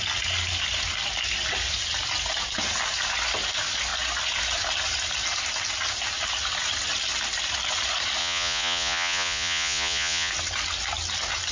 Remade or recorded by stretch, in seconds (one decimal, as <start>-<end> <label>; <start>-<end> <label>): 0.0-8.2 recorded; 8.2-10.3 remade; 10.3-11.5 recorded